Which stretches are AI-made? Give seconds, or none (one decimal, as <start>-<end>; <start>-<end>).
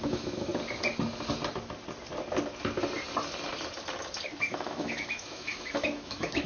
0.0-0.5; 4.4-6.5